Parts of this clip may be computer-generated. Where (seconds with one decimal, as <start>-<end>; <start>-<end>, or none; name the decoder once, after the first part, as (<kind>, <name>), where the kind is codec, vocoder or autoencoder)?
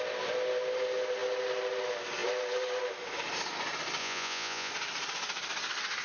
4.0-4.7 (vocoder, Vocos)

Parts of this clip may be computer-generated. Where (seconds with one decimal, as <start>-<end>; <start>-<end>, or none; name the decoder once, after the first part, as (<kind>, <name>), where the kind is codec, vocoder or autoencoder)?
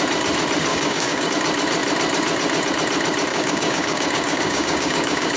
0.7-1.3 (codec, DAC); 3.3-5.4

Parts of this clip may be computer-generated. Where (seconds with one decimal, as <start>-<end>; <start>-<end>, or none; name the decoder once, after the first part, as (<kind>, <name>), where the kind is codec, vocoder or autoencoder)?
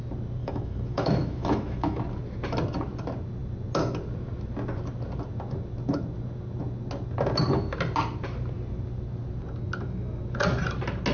0.4-2.0 (autoencoder, DAC-VAE)